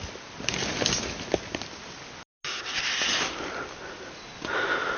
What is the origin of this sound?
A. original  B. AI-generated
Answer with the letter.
A